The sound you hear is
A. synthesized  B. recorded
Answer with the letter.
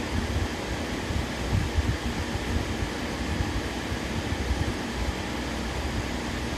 B